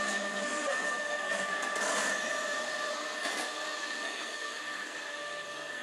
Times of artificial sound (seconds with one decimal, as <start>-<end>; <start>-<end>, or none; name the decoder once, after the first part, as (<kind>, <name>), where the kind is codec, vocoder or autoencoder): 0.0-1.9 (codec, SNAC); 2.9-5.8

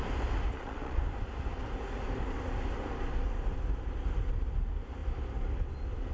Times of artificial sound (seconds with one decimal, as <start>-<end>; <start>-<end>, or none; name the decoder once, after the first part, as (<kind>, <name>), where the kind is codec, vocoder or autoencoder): 0.5-1.0 (vocoder, Vocos)

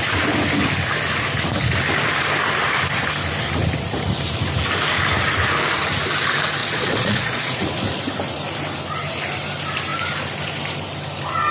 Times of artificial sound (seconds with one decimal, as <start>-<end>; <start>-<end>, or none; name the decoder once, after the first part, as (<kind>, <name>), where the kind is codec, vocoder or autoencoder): 6.6-7.6 (vocoder, Vocos)